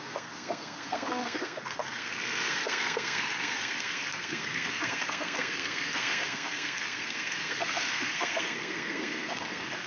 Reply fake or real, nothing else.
fake